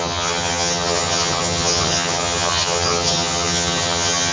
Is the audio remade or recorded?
remade